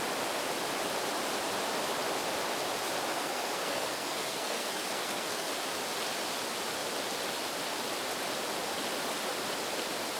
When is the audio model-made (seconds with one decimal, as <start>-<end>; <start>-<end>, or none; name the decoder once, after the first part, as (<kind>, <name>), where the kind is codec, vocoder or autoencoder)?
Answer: 3.1-5.5 (codec, SNAC)